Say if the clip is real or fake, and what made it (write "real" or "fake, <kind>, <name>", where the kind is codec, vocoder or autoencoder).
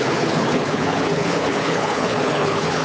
fake, codec, HILCodec